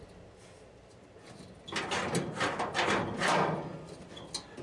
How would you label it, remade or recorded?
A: recorded